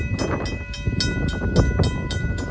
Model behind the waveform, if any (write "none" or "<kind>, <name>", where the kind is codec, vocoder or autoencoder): none